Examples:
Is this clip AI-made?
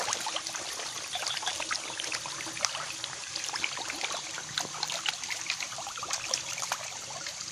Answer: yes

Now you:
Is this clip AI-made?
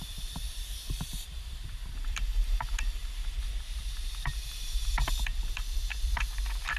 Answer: yes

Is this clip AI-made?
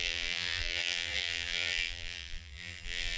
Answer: yes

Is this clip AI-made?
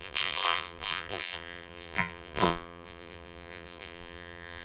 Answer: yes